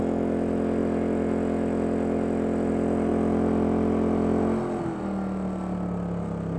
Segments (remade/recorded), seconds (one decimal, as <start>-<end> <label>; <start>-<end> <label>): 0.0-6.6 recorded